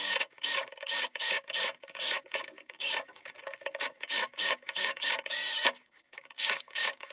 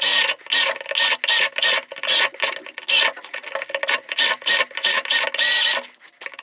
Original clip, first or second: second